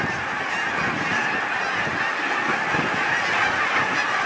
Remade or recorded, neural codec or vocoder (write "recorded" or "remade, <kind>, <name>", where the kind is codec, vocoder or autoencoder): recorded